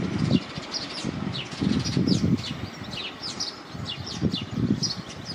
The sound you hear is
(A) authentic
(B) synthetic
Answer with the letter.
A